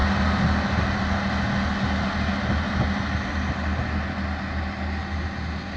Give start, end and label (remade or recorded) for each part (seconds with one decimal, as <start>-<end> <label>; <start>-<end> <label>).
0.0-5.8 recorded